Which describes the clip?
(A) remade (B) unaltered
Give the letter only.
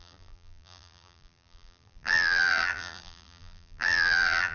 A